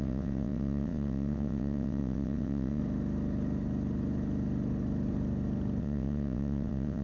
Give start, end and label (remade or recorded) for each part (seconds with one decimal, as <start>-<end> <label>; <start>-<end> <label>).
0.0-2.8 remade; 2.8-5.8 recorded; 5.8-7.0 remade